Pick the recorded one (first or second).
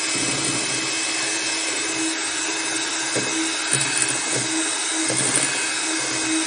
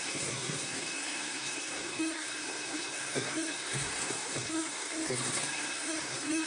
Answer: first